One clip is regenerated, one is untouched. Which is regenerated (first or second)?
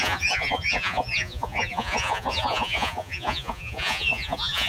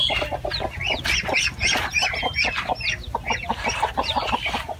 first